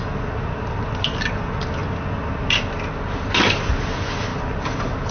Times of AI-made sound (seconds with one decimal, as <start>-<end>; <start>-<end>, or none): 4.3-5.1